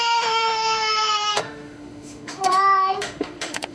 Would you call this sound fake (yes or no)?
yes